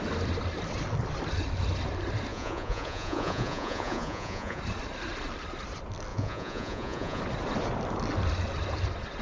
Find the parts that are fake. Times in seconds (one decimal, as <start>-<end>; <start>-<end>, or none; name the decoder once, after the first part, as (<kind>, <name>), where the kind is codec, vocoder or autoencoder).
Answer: 2.3-4.6 (vocoder, Vocos); 6.1-7.2